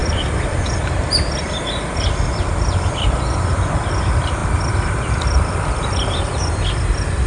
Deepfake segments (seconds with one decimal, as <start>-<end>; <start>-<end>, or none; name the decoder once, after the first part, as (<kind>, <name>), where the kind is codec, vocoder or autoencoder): 0.0-7.3 (vocoder, BigVGAN v2)